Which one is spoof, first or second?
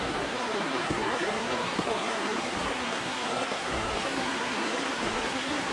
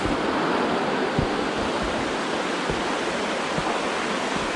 first